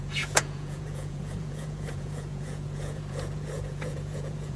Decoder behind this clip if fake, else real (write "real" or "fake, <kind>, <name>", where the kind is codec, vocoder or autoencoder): fake, vocoder, Vocos